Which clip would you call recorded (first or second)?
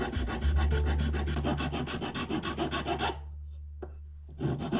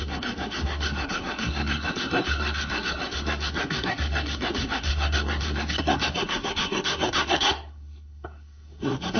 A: first